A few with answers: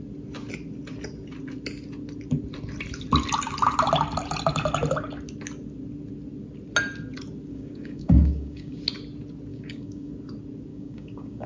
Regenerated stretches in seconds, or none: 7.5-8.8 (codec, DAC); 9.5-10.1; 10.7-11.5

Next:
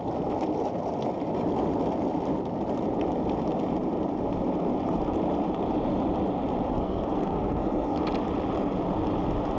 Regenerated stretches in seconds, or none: 6.7-8.0 (codec, SNAC)

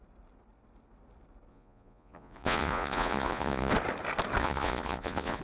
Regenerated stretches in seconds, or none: 1.5-3.7 (vocoder, Vocos); 4.4-5.4

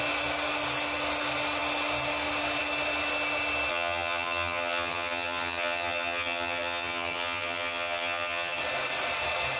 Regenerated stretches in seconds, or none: 3.7-8.6 (vocoder, HiFi-GAN)

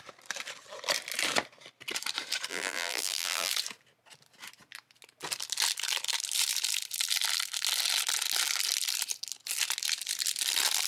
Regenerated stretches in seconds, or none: 2.5-3.5 (vocoder, BigVGAN v2)

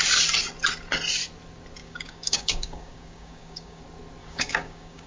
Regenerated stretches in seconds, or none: 1.8-3.8 (codec, DAC); 4.2-5.1

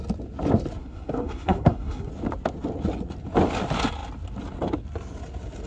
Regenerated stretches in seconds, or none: 0.8-2.1 (codec, SNAC)

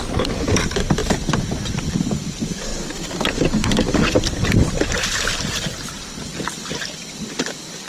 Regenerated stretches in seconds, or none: 0.0-2.7 (vocoder, BigVGAN v2); 4.2-7.9